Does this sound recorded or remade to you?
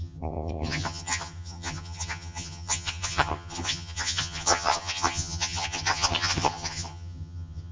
remade